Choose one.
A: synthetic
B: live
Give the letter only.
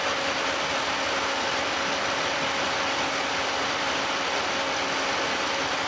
B